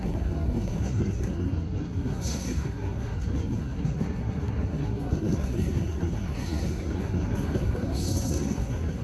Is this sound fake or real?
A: fake